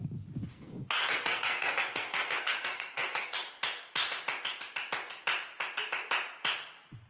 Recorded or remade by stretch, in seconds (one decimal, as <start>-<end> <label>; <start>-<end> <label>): 0.0-0.5 recorded; 0.5-3.6 remade; 3.6-7.1 recorded